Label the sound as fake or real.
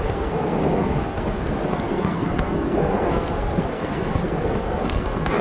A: fake